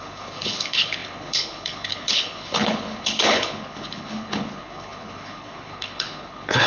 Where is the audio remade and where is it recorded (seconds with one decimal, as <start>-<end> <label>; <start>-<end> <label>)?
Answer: 0.0-6.7 remade